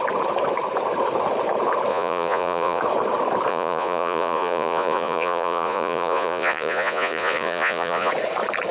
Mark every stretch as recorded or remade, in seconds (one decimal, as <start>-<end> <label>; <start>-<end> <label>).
0.0-1.9 recorded; 1.9-2.8 remade; 2.8-3.5 recorded; 3.5-8.1 remade; 8.1-8.7 recorded